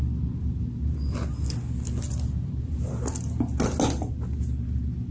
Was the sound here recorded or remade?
recorded